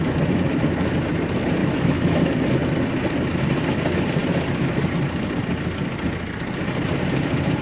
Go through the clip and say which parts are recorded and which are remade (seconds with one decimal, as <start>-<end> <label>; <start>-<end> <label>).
0.0-1.6 recorded; 1.6-2.2 remade; 2.2-7.6 recorded